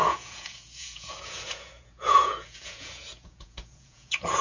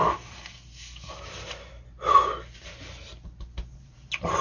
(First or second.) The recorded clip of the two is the second